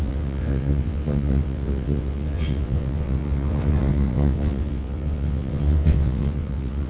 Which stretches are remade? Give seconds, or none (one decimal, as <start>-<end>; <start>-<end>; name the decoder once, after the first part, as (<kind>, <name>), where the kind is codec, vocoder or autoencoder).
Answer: 0.0-6.9 (vocoder, WaveNeXt)